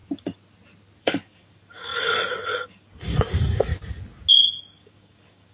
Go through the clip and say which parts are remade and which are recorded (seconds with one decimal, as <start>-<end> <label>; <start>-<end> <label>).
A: 0.0-1.0 recorded; 1.0-3.7 remade; 3.7-4.3 recorded; 4.3-5.5 remade